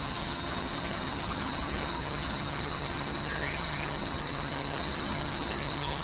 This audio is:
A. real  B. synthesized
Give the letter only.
B